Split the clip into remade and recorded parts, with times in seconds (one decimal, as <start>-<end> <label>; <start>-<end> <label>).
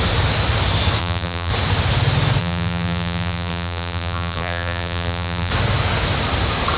0.0-1.0 recorded; 1.0-1.5 remade; 1.5-2.4 recorded; 2.4-5.5 remade; 5.5-6.8 recorded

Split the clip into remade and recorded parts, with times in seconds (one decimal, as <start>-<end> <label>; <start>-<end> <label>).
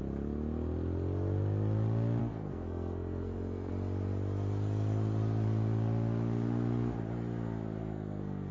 0.0-2.2 recorded; 2.2-3.7 remade; 3.7-7.8 recorded; 7.8-8.5 remade